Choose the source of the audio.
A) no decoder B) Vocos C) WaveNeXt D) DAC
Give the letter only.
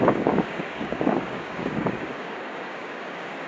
D